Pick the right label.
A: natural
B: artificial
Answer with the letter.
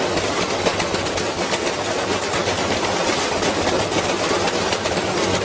A